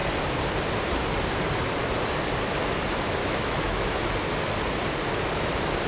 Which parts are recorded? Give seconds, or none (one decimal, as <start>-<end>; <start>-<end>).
0.0-3.2; 4.1-5.9